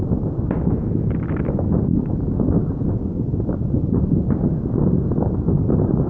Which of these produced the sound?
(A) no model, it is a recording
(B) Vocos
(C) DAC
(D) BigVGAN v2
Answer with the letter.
A